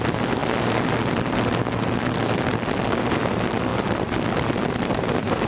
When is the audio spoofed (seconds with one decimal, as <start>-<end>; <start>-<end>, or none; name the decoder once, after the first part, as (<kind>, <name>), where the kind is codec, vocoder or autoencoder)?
none